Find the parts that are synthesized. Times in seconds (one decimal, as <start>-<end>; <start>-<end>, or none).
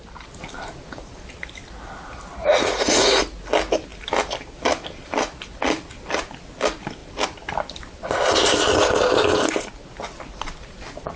2.4-3.2